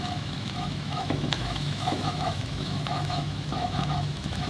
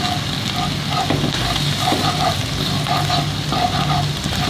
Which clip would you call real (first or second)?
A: second